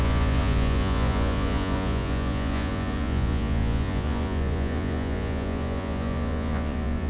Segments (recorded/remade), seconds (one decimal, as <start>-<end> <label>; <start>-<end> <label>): 0.0-7.1 remade